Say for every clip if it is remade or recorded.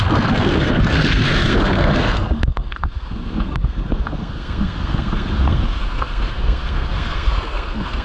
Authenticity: remade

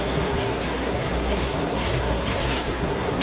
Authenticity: remade